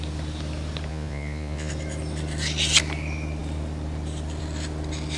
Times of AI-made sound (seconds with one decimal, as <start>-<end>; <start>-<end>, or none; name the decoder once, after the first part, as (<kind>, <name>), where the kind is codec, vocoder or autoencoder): 0.9-1.7 (vocoder, Vocos)